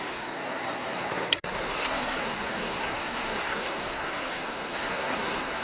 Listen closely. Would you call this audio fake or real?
fake